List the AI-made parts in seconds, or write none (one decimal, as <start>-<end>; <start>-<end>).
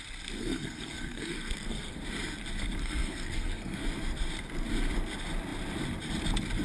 0.4-2.0; 2.8-3.8